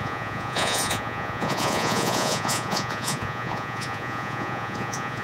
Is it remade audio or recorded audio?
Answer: remade